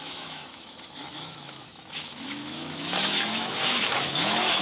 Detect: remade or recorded remade